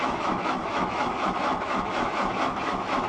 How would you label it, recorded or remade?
remade